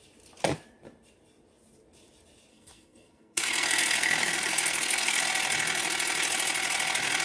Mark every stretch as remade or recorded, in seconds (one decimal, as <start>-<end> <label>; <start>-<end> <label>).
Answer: 0.0-2.5 recorded; 2.5-5.2 remade; 5.2-7.2 recorded